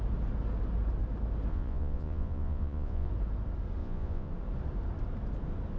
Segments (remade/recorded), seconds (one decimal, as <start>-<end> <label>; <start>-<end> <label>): 0.0-1.5 recorded; 1.5-3.1 remade; 3.1-3.8 recorded; 3.8-4.3 remade; 4.3-5.8 recorded